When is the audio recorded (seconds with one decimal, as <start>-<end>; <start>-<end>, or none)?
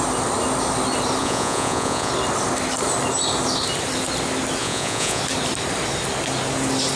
0.0-1.2; 2.1-4.6; 5.2-7.0